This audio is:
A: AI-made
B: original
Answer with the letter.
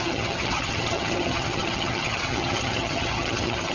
A